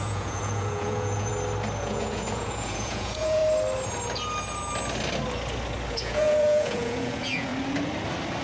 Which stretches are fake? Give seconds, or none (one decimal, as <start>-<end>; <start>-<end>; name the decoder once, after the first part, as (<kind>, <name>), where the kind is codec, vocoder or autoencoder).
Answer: 0.0-1.3 (vocoder, Vocos); 1.8-3.4; 5.9-7.5